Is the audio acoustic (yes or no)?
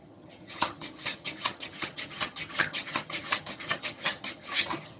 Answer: no